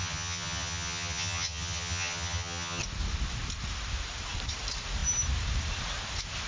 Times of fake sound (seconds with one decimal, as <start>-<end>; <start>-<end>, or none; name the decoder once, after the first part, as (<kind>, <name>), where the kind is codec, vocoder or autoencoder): 0.0-2.8 (vocoder, HiFi-GAN)